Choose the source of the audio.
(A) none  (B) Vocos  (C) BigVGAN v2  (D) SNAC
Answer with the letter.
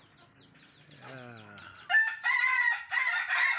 A